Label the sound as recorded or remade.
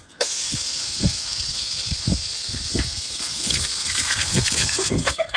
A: remade